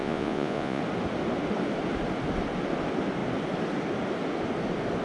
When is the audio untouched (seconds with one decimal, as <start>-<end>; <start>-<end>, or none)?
0.8-5.0